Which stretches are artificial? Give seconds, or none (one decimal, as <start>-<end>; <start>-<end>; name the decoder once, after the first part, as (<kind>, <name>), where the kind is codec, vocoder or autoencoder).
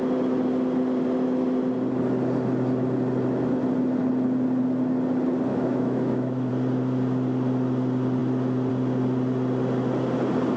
5.5-6.5 (autoencoder, DAC-VAE)